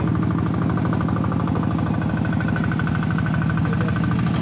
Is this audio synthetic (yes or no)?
no